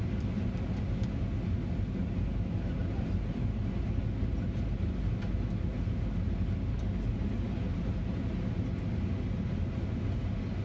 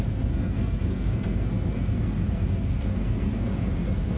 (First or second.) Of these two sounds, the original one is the first